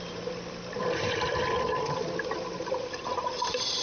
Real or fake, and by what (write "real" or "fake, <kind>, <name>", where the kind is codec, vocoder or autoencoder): real